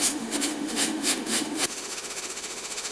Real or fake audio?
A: fake